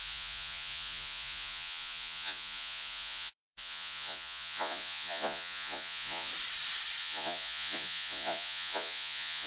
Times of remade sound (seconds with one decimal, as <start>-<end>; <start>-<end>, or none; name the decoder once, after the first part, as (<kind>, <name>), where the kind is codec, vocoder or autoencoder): 0.0-6.3 (vocoder, Vocos); 7.0-9.5